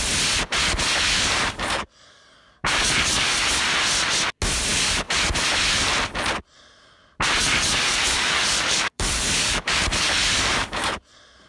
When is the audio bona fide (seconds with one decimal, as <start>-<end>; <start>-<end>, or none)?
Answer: 0.0-0.6; 3.6-4.7; 5.9-7.4; 11.0-11.5